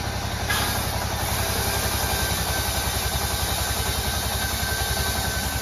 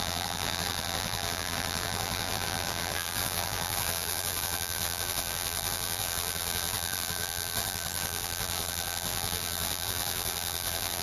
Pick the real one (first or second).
first